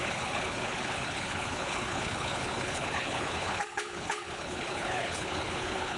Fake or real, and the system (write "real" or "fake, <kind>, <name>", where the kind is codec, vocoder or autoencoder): fake, codec, HILCodec